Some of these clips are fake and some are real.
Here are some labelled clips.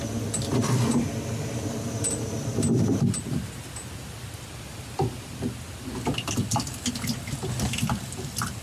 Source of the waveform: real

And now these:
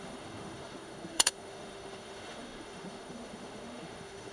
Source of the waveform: fake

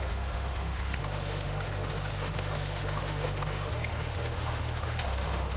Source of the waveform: fake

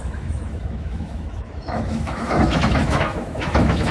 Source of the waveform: fake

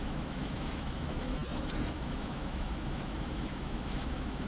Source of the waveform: fake